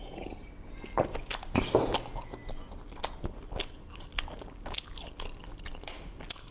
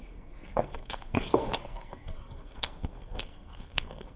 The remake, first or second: second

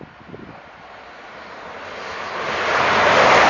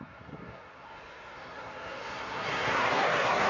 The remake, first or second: second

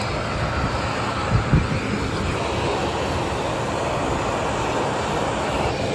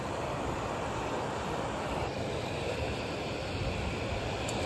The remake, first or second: second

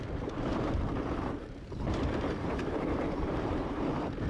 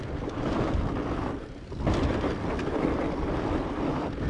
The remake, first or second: first